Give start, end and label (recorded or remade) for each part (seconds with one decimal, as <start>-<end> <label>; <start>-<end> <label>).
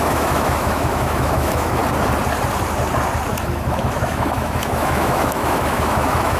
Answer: 0.0-1.8 remade; 1.8-3.4 recorded; 3.4-6.4 remade